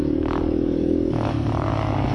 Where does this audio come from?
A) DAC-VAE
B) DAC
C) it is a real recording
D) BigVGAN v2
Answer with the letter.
B